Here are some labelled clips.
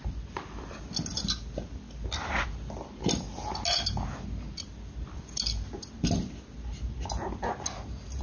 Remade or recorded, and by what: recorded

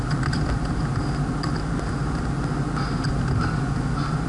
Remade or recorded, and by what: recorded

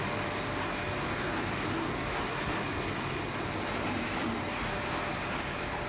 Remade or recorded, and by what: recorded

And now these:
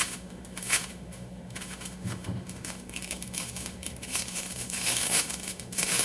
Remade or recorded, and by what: remade, autoencoder, DAC-VAE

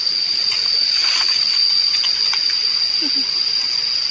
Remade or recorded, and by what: recorded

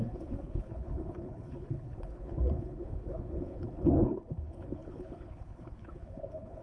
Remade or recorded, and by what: remade, codec, HILCodec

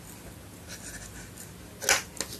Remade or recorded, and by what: recorded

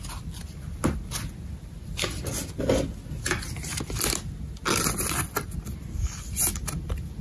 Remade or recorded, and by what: recorded